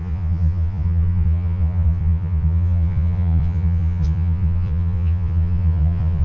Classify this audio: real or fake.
fake